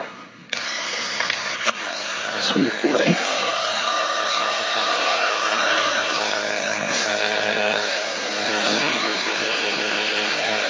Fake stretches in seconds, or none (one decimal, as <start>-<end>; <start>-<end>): 0.0-10.7